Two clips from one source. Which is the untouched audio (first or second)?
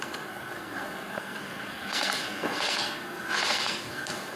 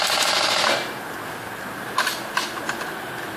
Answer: second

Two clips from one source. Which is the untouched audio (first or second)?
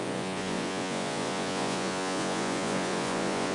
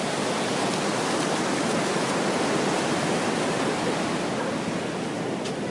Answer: second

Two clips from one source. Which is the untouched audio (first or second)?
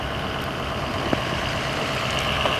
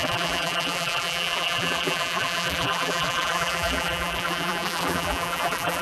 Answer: first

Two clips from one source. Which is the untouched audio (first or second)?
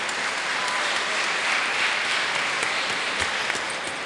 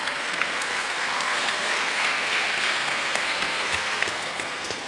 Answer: first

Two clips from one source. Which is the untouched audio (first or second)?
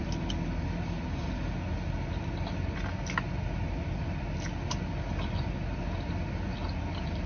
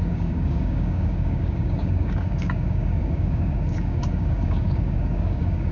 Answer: first